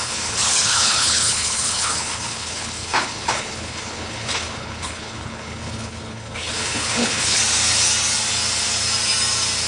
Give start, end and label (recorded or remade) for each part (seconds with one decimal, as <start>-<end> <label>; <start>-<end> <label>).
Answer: 0.0-7.4 remade; 7.4-9.7 recorded